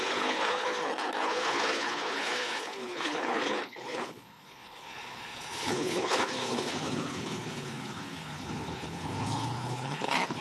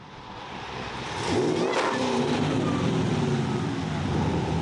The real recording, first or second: second